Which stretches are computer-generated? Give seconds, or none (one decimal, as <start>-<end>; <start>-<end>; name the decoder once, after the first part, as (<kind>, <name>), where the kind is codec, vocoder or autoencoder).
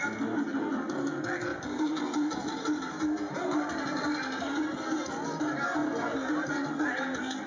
1.5-5.0 (vocoder, BigVGAN v2)